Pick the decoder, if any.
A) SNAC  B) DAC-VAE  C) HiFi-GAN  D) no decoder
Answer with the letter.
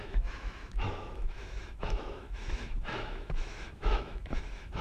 B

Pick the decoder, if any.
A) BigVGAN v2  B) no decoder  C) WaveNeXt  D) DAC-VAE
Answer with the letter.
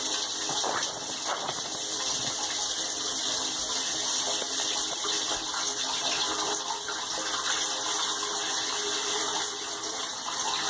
B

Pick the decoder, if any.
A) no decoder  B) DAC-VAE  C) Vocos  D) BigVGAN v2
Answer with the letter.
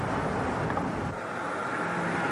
A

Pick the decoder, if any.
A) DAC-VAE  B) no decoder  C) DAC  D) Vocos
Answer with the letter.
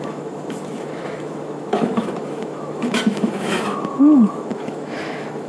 A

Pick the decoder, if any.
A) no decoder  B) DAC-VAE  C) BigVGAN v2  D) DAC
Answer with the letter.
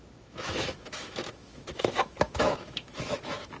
B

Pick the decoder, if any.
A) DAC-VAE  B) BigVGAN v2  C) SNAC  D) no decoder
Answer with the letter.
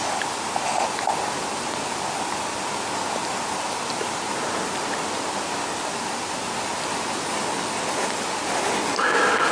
D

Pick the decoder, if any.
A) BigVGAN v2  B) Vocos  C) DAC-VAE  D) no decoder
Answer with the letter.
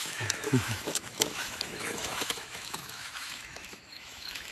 C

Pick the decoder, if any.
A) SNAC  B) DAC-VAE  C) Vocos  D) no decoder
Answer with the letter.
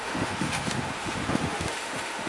B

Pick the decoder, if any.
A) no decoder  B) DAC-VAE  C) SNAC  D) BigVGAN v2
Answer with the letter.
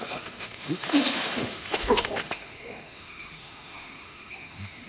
B